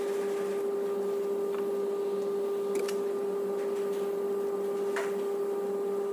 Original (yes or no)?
yes